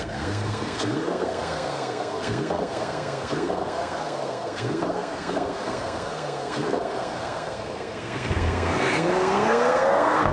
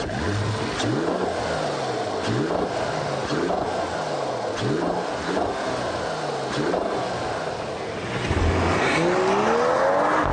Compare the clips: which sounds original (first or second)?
second